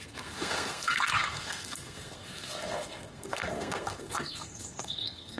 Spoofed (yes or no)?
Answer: yes